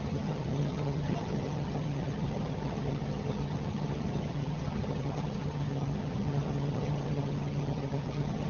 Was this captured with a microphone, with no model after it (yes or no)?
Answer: no